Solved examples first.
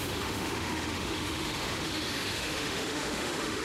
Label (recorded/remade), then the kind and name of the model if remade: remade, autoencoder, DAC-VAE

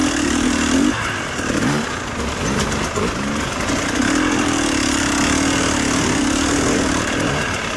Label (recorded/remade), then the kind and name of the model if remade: recorded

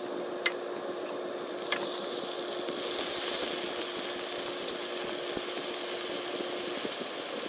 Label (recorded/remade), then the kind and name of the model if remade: recorded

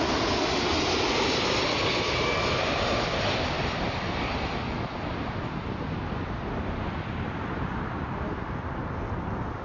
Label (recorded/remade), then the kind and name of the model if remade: recorded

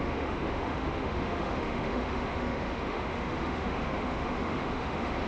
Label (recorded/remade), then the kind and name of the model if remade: remade, autoencoder, DAC-VAE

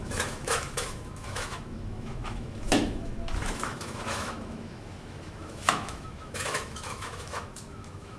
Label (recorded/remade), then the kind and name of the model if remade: remade, autoencoder, DAC-VAE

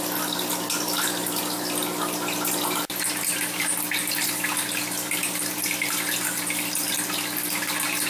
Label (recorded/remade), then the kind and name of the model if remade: recorded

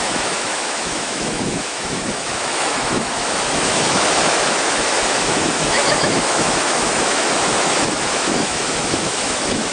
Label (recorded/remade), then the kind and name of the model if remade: remade, autoencoder, DAC-VAE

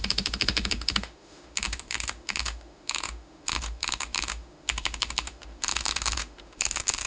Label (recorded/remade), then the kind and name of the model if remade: remade, autoencoder, DAC-VAE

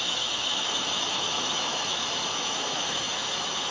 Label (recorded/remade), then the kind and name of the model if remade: remade, autoencoder, DAC-VAE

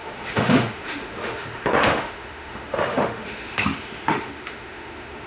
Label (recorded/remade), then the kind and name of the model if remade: remade, autoencoder, DAC-VAE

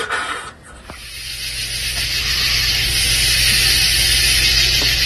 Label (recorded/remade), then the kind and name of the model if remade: recorded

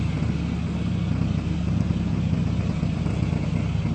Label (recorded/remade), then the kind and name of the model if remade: recorded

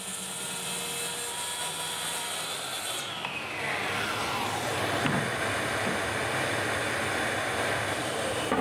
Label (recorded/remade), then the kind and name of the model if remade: recorded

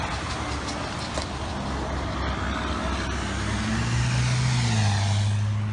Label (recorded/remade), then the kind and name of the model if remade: recorded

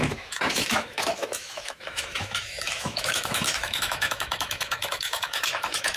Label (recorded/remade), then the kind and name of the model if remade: remade, autoencoder, DAC-VAE